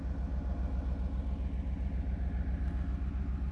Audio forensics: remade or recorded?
recorded